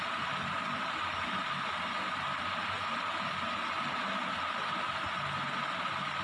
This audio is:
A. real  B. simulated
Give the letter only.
A